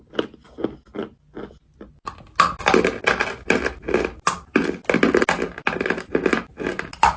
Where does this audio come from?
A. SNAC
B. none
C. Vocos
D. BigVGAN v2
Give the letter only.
B